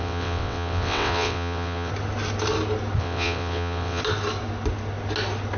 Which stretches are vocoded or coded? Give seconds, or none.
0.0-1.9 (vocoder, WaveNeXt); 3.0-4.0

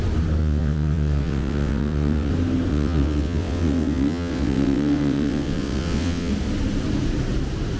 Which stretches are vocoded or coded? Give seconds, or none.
0.4-2.3 (vocoder, WaveNeXt); 2.7-6.3

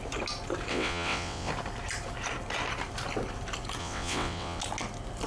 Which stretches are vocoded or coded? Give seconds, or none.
0.7-1.5 (vocoder, WaveNeXt); 3.8-4.6

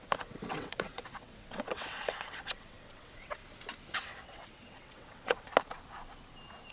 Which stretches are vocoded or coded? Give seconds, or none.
0.0-3.4 (vocoder, WaveNeXt); 3.9-5.5

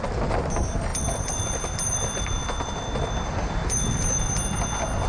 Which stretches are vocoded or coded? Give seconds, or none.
none

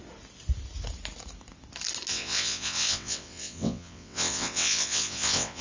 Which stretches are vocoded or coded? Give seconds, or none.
2.1-5.6 (vocoder, WaveNeXt)

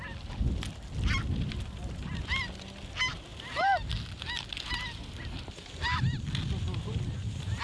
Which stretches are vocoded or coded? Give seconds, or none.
none